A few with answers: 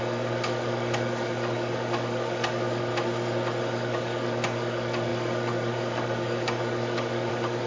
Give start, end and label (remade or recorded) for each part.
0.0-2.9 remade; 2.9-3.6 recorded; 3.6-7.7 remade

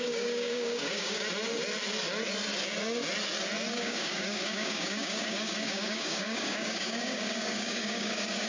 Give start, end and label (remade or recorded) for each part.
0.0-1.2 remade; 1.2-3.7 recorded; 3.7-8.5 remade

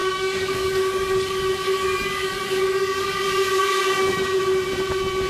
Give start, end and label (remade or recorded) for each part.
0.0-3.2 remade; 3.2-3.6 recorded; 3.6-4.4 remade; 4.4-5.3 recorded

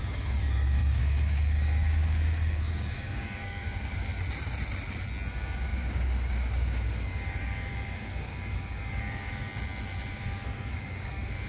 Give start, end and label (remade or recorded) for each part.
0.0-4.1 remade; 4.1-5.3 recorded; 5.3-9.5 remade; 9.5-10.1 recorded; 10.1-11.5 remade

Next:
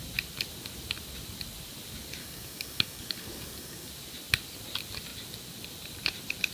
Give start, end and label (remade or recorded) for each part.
0.0-2.2 recorded; 2.2-3.9 remade; 3.9-6.5 recorded

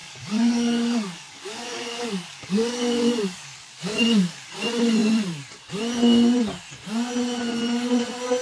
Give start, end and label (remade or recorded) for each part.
0.0-4.5 remade; 4.5-8.4 recorded

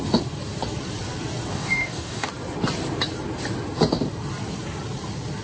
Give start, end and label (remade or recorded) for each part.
0.0-1.5 recorded; 1.5-2.3 remade; 2.3-5.4 recorded

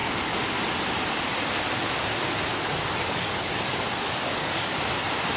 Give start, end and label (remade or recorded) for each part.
0.0-2.5 recorded; 2.5-4.7 remade; 4.7-5.4 recorded